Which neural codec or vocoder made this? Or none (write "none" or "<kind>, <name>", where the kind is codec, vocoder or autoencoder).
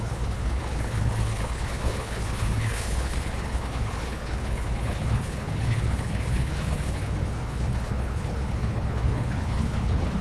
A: codec, HILCodec